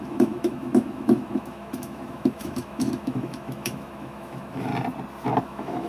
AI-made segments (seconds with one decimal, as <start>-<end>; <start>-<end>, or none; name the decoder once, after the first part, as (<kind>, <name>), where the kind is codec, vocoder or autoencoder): 0.0-4.7 (autoencoder, DAC-VAE); 5.4-5.9